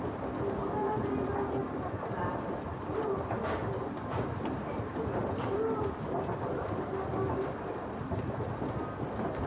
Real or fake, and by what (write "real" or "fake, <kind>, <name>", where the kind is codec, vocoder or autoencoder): real